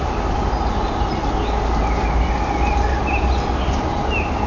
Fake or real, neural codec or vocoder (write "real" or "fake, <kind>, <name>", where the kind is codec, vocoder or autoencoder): real